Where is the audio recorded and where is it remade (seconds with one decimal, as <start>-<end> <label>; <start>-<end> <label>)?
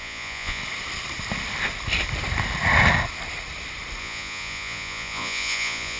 0.0-0.6 remade; 0.6-4.0 recorded; 4.0-6.0 remade